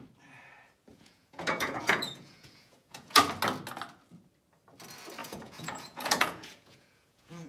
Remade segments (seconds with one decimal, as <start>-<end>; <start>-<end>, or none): 0.9-3.2; 5.2-7.5